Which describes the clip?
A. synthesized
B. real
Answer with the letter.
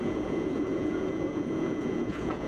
A